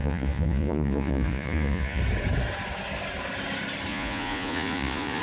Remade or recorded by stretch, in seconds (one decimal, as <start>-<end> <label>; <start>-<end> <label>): 0.0-2.0 remade; 2.0-3.9 recorded; 3.9-5.2 remade